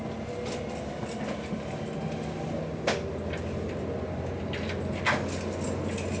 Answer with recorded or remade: recorded